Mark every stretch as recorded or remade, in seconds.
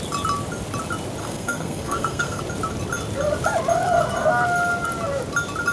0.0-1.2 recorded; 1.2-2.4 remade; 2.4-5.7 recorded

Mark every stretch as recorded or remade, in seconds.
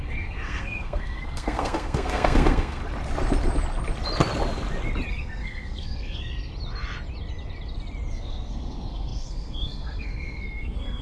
0.0-2.8 remade; 2.8-5.1 recorded; 5.1-6.5 remade; 6.5-8.1 recorded; 8.1-11.0 remade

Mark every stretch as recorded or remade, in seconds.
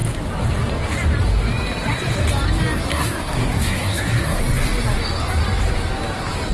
0.0-2.9 recorded; 2.9-4.4 remade; 4.4-6.5 recorded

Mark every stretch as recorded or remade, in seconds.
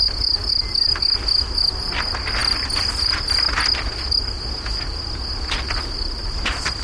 0.0-6.8 recorded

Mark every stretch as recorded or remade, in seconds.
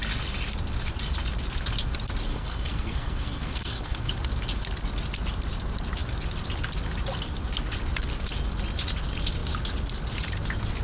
0.0-2.3 recorded; 2.3-4.1 remade; 4.1-10.8 recorded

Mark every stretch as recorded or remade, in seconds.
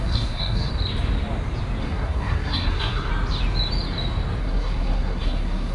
0.0-0.7 remade; 0.7-1.8 recorded; 1.8-3.1 remade; 3.1-4.4 recorded; 4.4-5.7 remade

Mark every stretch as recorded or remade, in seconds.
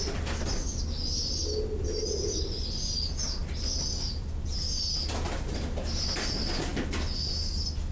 0.0-7.9 recorded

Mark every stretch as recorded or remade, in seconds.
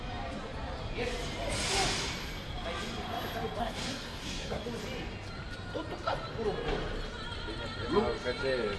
0.0-3.6 recorded; 3.6-4.6 remade; 4.6-8.8 recorded